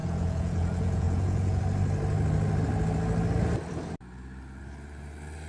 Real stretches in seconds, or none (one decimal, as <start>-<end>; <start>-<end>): 1.6-5.5